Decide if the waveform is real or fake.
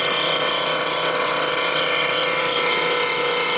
fake